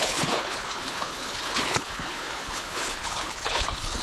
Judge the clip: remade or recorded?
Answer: remade